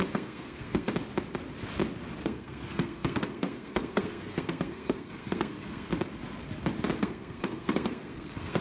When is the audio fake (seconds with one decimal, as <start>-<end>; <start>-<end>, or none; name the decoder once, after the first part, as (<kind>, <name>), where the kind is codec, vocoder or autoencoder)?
0.0-0.9 (codec, SNAC); 2.2-5.9; 7.0-8.6